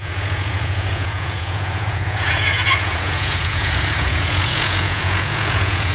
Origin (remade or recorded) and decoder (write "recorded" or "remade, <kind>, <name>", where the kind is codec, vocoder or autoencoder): remade, vocoder, Vocos